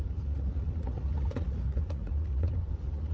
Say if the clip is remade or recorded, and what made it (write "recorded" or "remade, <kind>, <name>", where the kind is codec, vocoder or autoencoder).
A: remade, vocoder, Vocos